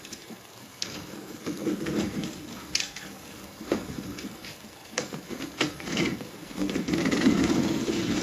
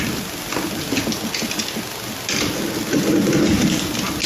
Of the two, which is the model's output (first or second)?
first